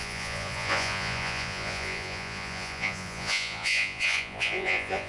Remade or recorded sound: remade